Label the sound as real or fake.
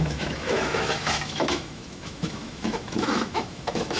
fake